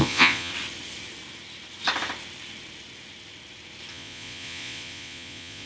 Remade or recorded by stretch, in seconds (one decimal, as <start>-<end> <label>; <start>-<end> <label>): 0.0-0.5 remade; 0.5-3.9 recorded; 3.9-5.7 remade